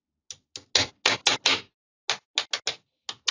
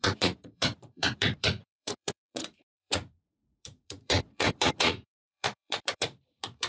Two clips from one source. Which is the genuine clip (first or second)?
first